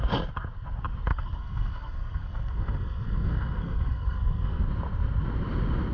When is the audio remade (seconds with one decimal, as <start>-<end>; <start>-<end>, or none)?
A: 1.1-4.6